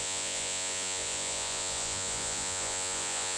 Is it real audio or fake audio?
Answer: fake